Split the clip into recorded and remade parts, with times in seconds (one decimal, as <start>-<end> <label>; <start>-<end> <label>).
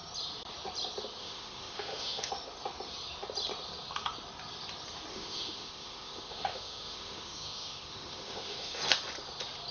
0.0-1.2 recorded; 1.2-2.3 remade; 2.3-5.1 recorded; 5.1-8.8 remade; 8.8-9.7 recorded